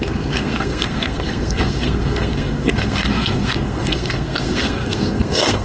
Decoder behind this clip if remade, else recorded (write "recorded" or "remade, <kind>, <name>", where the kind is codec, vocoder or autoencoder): remade, codec, SNAC